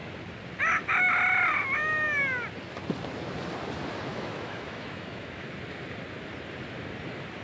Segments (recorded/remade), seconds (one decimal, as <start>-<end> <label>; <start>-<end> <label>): 0.0-4.1 recorded; 4.1-5.5 remade; 5.5-7.4 recorded